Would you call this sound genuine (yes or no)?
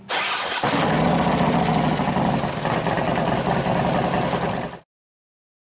yes